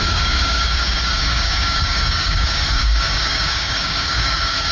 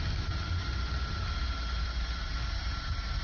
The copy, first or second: first